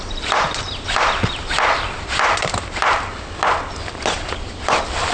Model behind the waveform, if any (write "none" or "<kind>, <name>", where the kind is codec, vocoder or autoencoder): none